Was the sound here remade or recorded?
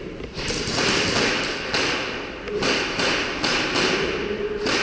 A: recorded